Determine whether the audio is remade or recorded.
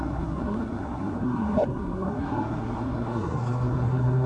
remade